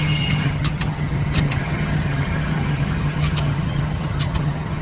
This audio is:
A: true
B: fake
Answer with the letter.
B